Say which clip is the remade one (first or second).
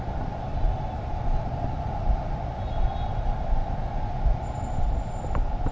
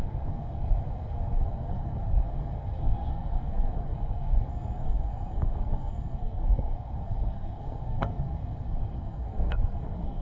second